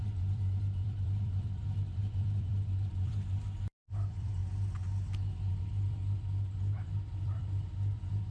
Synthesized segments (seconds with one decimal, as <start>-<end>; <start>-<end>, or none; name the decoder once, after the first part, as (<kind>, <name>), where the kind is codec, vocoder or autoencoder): 0.0-4.4 (vocoder, BigVGAN v2); 5.5-8.3